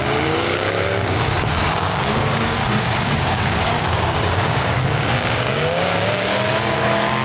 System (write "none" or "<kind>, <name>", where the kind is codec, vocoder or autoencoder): codec, DAC